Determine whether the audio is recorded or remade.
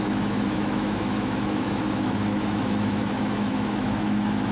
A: remade